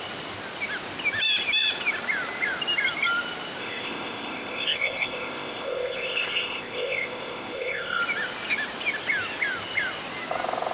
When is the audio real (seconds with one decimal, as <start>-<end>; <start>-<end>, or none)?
0.0-3.6; 8.0-10.7